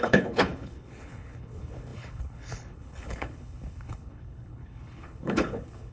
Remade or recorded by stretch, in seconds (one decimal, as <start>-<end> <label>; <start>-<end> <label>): 0.0-5.9 remade